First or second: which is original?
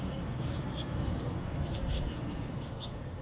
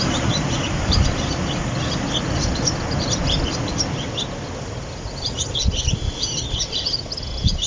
second